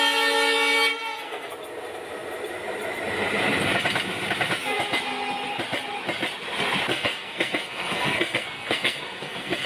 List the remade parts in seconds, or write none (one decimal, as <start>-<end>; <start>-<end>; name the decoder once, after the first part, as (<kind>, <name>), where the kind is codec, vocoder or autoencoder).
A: 0.9-1.5 (codec, SNAC); 6.9-9.7